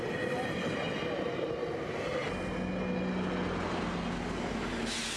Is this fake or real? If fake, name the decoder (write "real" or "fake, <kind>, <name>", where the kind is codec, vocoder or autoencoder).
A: real